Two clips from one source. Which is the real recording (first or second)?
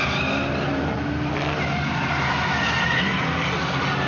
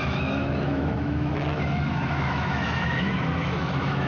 first